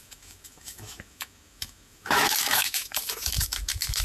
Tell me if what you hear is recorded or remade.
remade